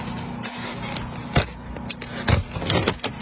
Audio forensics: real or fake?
real